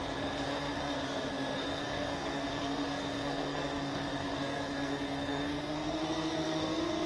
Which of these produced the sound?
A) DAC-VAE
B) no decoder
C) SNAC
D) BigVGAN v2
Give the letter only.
C